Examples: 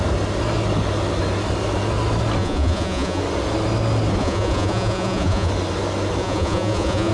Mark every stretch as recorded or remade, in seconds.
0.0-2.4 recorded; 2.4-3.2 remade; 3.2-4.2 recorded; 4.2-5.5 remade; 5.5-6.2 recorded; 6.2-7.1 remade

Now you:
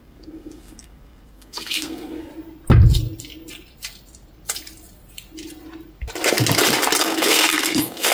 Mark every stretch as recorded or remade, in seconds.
0.0-2.3 remade; 2.3-7.0 recorded; 7.0-8.1 remade

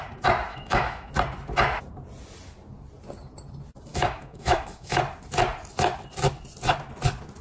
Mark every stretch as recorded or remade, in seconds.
0.0-0.5 recorded; 0.5-1.1 remade; 1.1-3.9 recorded; 3.9-5.0 remade; 5.0-7.4 recorded